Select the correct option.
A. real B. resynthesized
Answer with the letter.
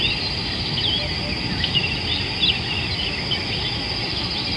A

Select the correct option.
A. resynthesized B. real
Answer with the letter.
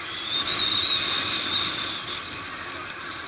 B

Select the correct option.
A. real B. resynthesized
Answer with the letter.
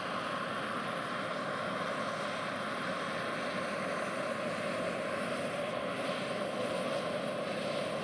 A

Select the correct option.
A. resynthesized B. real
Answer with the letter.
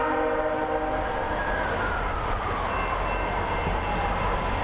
B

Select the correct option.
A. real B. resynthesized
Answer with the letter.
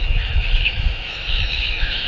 B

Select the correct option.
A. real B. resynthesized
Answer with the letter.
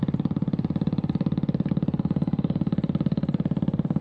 A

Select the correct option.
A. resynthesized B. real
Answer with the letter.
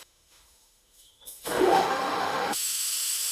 A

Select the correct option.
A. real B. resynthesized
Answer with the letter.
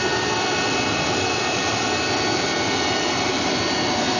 A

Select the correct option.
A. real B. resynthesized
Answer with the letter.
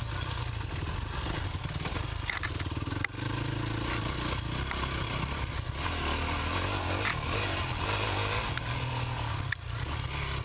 A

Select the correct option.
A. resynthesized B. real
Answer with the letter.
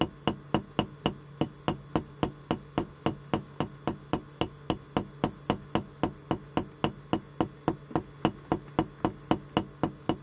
B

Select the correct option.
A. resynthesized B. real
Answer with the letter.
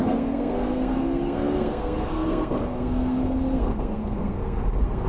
A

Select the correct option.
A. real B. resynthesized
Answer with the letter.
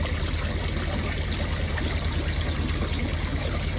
A